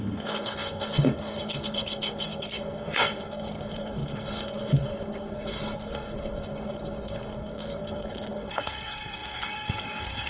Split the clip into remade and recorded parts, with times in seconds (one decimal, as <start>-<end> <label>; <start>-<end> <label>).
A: 0.0-10.3 remade

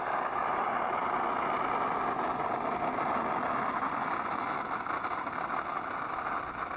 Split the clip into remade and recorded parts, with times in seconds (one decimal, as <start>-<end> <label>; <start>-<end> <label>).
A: 0.0-6.8 recorded

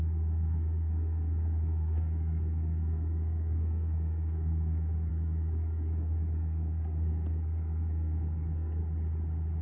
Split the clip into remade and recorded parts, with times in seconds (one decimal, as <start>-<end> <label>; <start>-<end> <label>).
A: 0.0-8.8 remade; 8.8-9.6 recorded

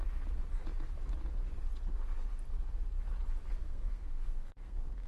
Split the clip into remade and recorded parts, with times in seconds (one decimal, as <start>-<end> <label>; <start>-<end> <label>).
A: 0.0-3.6 recorded; 3.6-5.1 remade

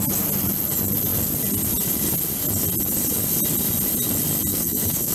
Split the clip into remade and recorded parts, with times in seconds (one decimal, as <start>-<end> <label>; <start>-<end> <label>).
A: 0.0-4.5 recorded; 4.5-5.1 remade

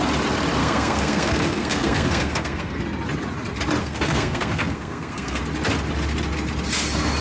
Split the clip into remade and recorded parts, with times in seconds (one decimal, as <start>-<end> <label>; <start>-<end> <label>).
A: 0.0-0.6 recorded; 0.6-2.8 remade; 2.8-3.8 recorded; 3.8-5.4 remade; 5.4-7.2 recorded